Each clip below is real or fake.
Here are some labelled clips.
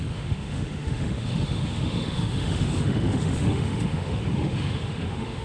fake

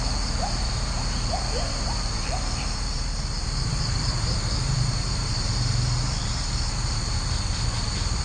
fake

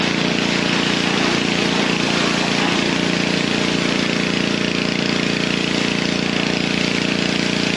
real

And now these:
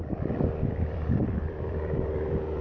fake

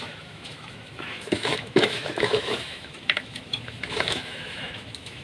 fake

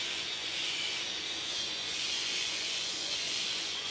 fake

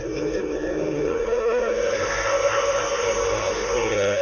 fake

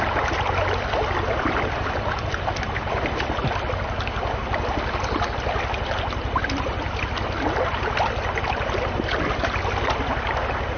real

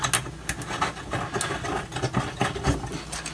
real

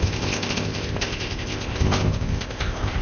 fake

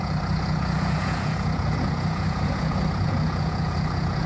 fake